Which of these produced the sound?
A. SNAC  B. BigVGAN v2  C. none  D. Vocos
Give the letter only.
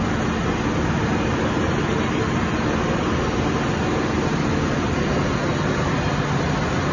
C